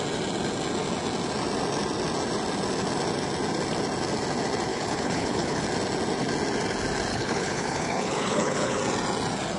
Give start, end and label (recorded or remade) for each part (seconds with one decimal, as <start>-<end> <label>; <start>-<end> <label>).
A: 0.0-4.7 recorded; 4.7-5.6 remade; 5.6-7.1 recorded; 7.1-8.8 remade; 8.8-9.6 recorded